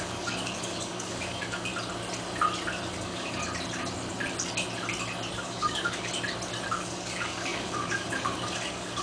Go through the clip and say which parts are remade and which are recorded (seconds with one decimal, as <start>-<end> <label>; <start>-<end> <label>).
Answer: 0.0-1.7 remade; 1.7-3.0 recorded; 3.0-3.4 remade; 3.4-5.4 recorded; 5.4-6.1 remade; 6.1-6.7 recorded; 6.7-9.0 remade